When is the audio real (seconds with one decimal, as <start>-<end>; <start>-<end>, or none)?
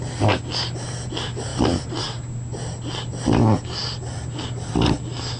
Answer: 0.0-5.4